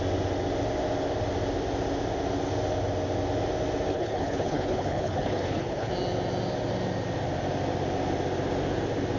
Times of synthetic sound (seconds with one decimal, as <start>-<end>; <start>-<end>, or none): 3.9-5.9